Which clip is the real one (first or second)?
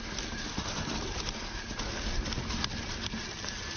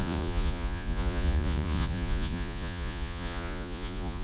first